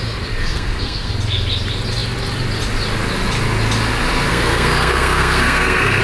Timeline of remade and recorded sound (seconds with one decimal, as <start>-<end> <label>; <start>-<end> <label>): 0.0-0.4 recorded; 0.4-1.1 remade; 1.1-4.3 recorded; 4.3-6.0 remade